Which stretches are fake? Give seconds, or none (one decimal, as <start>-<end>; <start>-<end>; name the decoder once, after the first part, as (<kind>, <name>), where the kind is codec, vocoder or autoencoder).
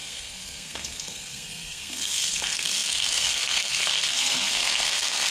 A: 0.0-5.3 (codec, SNAC)